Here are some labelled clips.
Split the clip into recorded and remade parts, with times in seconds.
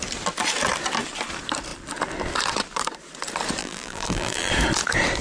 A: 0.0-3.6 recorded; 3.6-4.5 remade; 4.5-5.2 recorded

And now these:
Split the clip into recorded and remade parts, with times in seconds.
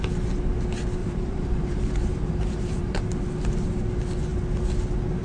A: 0.0-1.0 recorded; 1.0-3.0 remade; 3.0-5.2 recorded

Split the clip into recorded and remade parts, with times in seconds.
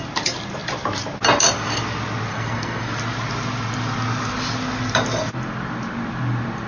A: 0.0-2.3 recorded; 2.3-2.9 remade; 2.9-6.7 recorded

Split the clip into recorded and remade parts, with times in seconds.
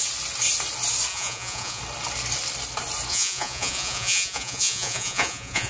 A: 0.0-1.1 recorded; 1.1-1.8 remade; 1.8-3.1 recorded; 3.1-5.7 remade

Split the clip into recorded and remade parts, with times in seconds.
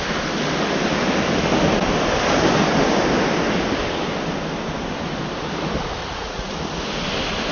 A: 0.0-6.0 recorded; 6.0-6.5 remade; 6.5-7.5 recorded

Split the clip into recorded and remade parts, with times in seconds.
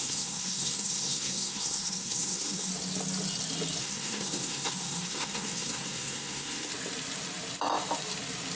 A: 0.0-2.7 remade; 2.7-3.8 recorded; 3.8-6.7 remade; 6.7-8.6 recorded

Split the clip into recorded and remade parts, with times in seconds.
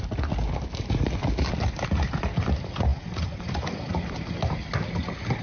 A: 0.0-5.4 recorded